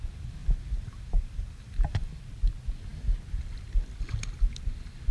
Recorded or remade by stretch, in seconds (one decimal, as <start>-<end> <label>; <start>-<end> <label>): 0.0-0.4 recorded; 0.4-2.0 remade; 2.0-5.1 recorded